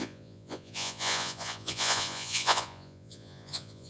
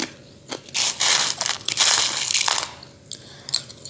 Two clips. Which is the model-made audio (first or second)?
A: first